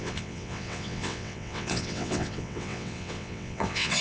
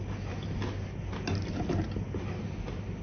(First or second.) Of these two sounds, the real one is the second